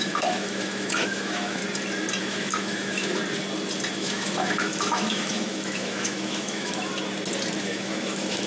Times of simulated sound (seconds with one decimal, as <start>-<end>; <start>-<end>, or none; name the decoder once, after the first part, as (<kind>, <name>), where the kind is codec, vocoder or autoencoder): 0.0-1.6 (autoencoder, DAC-VAE); 2.2-3.2; 3.9-6.9; 7.6-8.5

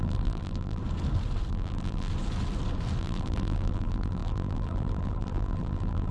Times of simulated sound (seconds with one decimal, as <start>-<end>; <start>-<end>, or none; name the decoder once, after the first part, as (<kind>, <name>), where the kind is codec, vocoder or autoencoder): 0.0-0.8 (vocoder, BigVGAN v2); 1.5-2.1; 3.0-6.1

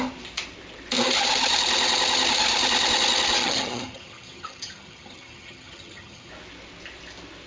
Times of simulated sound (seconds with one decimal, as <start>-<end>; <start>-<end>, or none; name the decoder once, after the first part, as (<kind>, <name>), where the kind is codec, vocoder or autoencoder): 3.4-6.3 (vocoder, HiFi-GAN)

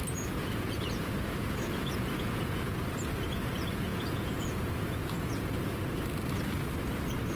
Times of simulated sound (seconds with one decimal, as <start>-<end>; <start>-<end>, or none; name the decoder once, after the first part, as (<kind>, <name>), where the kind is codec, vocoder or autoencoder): 0.0-2.9 (vocoder, Vocos); 3.9-5.6

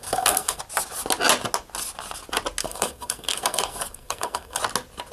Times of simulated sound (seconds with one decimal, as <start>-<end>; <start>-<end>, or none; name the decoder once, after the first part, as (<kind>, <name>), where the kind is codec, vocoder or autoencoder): 0.0-0.6 (codec, SNAC); 2.6-4.6

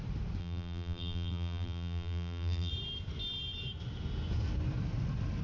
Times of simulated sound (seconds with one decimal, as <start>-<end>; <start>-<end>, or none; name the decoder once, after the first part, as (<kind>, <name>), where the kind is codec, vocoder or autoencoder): 0.4-2.7 (vocoder, BigVGAN v2)